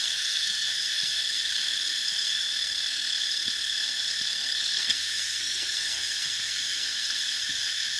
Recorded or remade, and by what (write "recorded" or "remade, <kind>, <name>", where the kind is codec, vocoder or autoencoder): remade, codec, SNAC